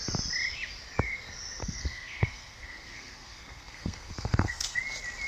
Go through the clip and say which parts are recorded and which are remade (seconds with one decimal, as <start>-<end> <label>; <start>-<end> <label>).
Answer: 0.0-1.6 recorded; 1.6-4.8 remade; 4.8-5.3 recorded